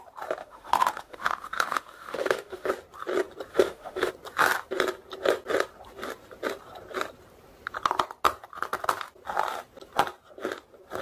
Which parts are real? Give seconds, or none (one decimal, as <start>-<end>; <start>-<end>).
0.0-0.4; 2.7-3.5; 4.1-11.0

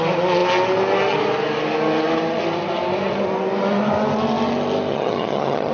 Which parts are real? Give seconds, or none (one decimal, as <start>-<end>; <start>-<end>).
0.0-4.9

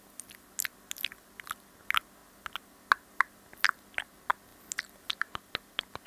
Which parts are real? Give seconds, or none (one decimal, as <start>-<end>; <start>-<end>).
0.0-2.2; 2.8-4.5; 5.1-6.1

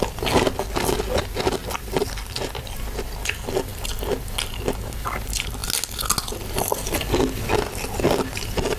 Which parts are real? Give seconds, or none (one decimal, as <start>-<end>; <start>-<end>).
0.0-8.8

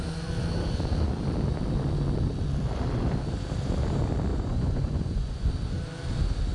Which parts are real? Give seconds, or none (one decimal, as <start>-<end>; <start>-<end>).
0.0-4.3; 5.5-6.5

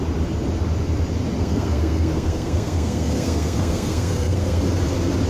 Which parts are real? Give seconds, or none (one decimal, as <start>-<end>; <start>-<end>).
0.0-1.4; 4.6-5.3

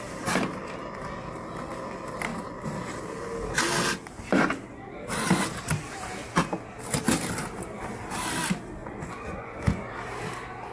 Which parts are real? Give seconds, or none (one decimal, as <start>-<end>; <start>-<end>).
0.0-8.8; 9.9-10.7

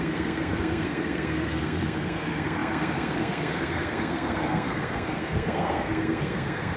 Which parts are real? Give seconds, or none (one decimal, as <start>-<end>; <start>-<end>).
none